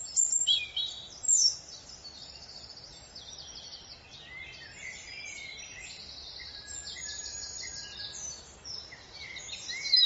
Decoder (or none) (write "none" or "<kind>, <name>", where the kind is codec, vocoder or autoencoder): none